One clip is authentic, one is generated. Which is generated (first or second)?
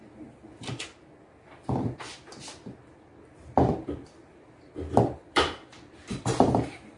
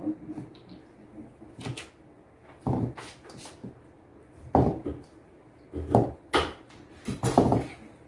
first